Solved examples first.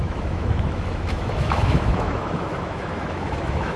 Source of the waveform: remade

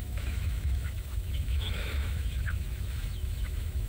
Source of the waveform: remade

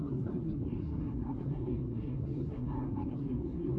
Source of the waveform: remade